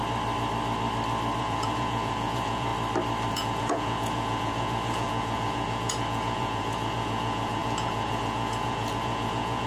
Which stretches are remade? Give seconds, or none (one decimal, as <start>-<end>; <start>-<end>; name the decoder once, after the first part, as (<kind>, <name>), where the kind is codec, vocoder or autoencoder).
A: 1.4-2.7 (vocoder, Vocos); 3.3-9.7